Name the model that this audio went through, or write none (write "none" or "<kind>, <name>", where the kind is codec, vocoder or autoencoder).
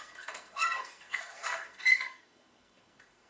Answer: codec, SNAC